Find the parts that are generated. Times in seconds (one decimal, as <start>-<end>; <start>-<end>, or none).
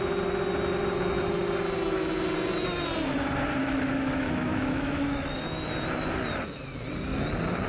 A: 3.6-5.4